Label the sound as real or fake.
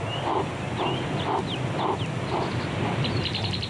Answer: real